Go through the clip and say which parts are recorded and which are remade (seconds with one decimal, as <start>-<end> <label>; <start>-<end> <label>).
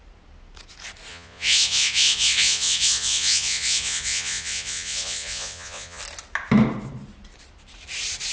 0.0-1.1 recorded; 1.1-6.0 remade; 6.0-8.3 recorded